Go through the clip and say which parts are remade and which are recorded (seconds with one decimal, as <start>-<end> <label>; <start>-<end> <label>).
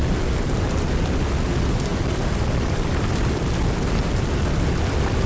0.0-5.3 recorded